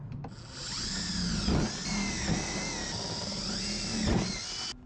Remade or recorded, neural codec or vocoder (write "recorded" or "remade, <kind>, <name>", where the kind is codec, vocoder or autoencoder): recorded